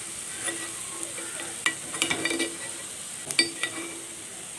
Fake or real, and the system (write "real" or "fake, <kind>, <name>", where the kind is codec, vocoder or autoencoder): real